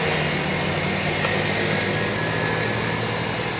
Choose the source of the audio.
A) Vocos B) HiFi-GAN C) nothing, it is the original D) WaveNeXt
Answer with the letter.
C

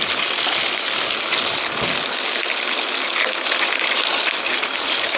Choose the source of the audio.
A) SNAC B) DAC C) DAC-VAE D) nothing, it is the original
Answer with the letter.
D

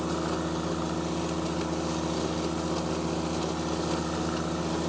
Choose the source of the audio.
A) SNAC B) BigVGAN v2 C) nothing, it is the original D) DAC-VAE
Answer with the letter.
C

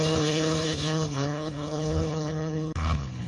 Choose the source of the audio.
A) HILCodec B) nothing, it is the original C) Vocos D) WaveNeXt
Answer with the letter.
A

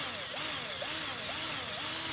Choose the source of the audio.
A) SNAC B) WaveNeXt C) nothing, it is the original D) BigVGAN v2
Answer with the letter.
C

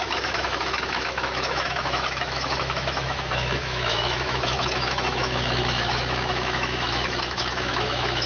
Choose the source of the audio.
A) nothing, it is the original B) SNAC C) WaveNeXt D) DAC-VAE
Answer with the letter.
D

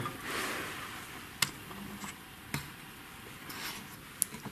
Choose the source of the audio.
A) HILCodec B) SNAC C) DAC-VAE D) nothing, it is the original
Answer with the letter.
D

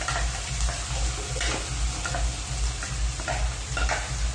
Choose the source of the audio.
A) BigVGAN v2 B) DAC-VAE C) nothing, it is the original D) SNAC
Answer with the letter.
C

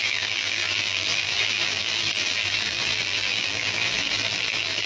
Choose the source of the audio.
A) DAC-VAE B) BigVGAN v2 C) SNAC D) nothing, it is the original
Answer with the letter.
B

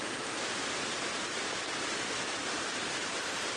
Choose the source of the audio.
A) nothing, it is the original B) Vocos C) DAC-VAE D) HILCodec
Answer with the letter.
A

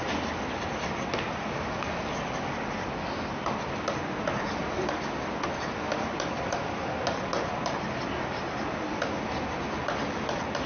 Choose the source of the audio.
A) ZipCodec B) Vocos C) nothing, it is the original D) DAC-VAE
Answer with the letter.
C